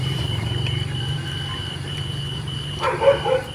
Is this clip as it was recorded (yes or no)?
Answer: no